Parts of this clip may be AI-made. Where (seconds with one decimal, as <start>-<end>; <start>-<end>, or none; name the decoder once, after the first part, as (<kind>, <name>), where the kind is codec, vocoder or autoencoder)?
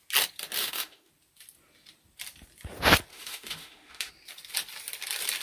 0.6-1.1 (autoencoder, DAC-VAE); 3.1-4.1